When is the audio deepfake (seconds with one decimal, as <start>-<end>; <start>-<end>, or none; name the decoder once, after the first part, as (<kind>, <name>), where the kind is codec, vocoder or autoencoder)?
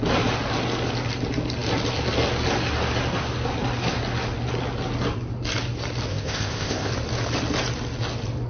6.1-6.9 (codec, ZipCodec)